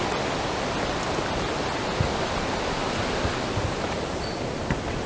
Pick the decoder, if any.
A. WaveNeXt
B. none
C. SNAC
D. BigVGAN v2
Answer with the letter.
B